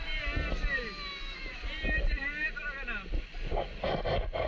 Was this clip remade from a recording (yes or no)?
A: no